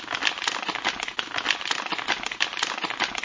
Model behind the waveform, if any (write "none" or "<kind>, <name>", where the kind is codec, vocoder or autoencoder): none